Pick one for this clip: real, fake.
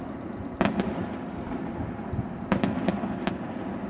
real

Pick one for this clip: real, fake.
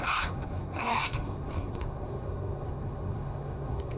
fake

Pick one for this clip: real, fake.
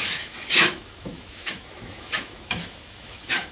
fake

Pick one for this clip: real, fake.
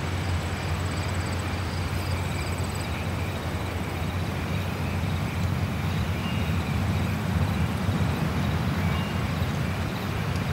fake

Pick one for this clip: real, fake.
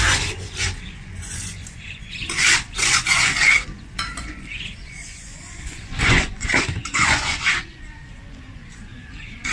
fake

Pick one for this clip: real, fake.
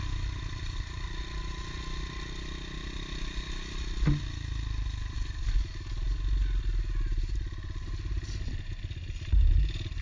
real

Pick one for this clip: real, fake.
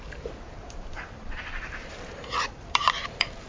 fake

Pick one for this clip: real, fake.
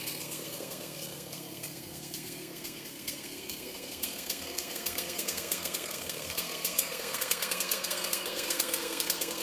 fake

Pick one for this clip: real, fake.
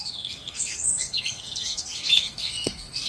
fake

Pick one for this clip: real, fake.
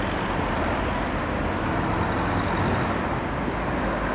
real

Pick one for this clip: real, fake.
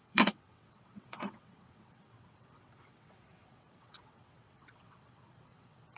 fake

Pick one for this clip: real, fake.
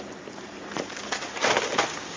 real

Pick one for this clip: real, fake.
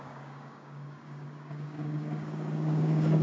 fake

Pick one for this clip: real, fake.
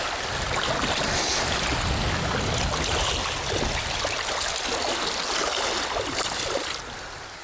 real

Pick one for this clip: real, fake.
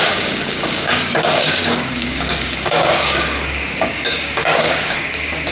fake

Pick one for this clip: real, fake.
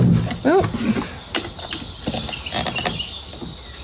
real